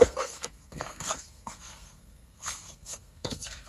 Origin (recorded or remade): remade